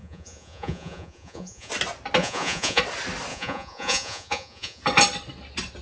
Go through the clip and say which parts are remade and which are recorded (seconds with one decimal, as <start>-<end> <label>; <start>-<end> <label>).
0.0-1.7 remade; 1.7-2.2 recorded; 2.2-2.8 remade; 2.8-3.3 recorded; 3.3-4.8 remade; 4.8-5.8 recorded